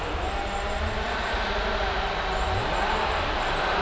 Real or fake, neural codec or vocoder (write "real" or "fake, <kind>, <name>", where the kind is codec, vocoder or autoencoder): real